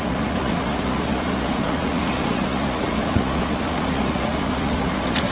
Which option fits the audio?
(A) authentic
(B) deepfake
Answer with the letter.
B